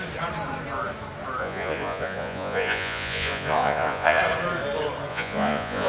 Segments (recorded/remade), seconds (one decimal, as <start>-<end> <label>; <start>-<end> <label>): 0.0-1.4 recorded; 1.4-4.2 remade; 4.2-5.1 recorded; 5.1-5.9 remade